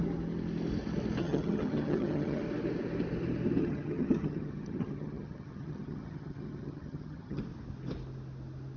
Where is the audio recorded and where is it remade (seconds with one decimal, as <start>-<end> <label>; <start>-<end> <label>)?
0.0-1.2 recorded; 1.2-2.4 remade; 2.4-3.6 recorded; 3.6-7.4 remade; 7.4-8.8 recorded